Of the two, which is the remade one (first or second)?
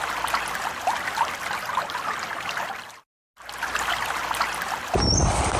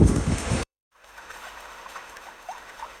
second